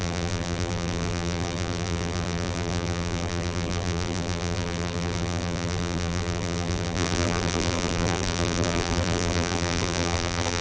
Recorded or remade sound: remade